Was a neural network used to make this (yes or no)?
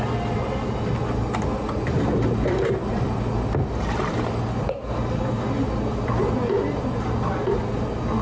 no